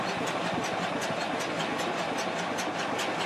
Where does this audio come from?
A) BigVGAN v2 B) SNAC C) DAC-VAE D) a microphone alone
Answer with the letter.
D